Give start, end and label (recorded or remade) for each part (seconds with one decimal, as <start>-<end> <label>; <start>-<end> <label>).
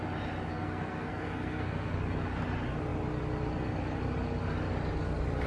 0.0-0.5 recorded; 0.5-1.9 remade; 1.9-5.5 recorded